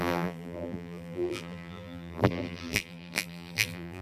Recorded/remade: remade